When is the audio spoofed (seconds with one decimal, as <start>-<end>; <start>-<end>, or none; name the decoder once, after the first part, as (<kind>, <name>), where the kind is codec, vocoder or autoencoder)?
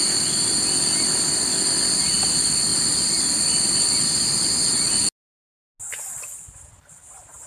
2.7-3.3 (vocoder, BigVGAN v2)